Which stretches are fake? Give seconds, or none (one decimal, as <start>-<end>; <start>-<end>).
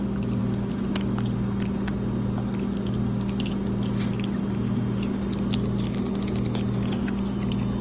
none